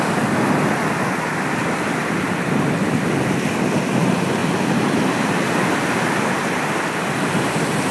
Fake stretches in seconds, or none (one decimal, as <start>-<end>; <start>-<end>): none